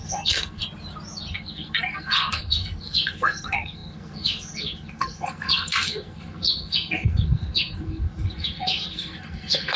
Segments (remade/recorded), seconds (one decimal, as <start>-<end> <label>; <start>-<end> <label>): 0.0-0.6 remade; 0.6-1.3 recorded; 1.3-9.8 remade